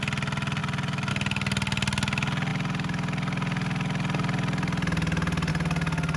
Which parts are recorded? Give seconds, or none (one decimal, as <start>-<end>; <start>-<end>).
0.0-6.2